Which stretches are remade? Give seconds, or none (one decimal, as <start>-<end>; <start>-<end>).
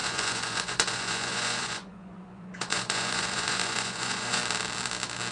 0.0-4.4